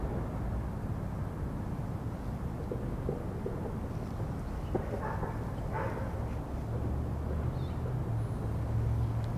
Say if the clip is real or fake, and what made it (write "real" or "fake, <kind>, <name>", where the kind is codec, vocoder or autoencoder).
real